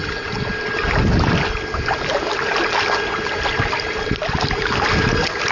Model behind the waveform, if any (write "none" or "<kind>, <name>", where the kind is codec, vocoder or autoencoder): none